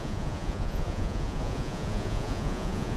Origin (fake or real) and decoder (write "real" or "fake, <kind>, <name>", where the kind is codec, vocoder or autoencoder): fake, vocoder, Vocos